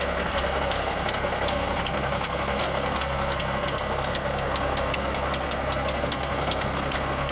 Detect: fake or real fake